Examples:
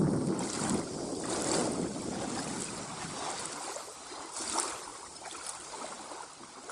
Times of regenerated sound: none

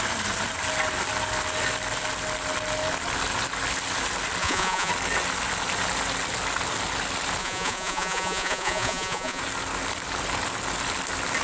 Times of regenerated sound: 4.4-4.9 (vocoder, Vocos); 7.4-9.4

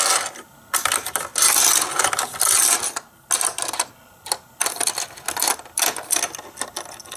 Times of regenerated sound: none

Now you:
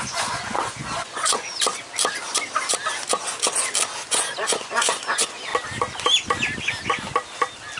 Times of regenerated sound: 0.0-1.5 (vocoder, Vocos); 4.1-5.5